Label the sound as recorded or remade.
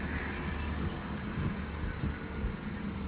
recorded